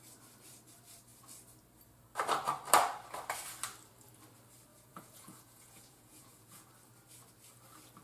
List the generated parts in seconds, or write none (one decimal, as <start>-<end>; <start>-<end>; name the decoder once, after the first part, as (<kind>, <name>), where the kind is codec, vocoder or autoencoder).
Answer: 4.7-6.7 (vocoder, Vocos)